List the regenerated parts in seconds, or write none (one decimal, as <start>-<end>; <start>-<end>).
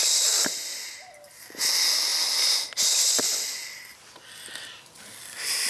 none